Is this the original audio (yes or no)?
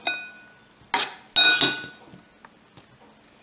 yes